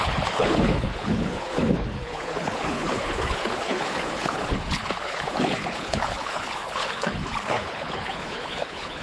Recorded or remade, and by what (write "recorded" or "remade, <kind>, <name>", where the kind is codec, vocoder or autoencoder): remade, codec, HILCodec